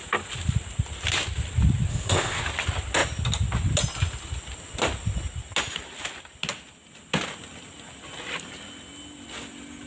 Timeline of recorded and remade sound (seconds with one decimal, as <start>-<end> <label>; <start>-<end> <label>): 0.0-1.9 recorded; 1.9-2.4 remade; 2.4-9.9 recorded